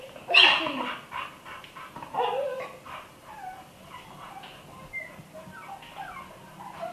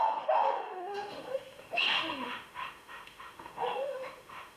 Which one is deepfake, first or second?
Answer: second